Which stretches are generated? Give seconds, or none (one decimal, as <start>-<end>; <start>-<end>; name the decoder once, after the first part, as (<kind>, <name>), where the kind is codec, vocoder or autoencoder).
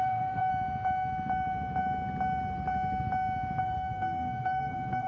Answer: 0.0-0.5 (codec, SNAC); 3.6-5.1